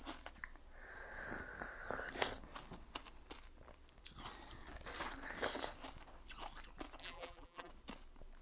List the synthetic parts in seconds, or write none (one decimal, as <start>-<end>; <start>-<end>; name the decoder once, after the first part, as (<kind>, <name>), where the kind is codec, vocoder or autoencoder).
7.0-7.7 (vocoder, BigVGAN v2)